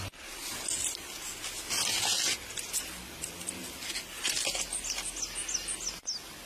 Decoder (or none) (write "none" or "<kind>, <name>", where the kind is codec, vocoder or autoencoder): none